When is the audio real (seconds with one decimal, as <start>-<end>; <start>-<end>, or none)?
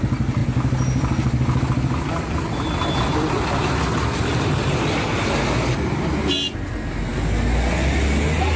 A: 0.0-8.6